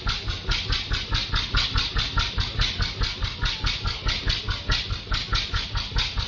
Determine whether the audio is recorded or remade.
recorded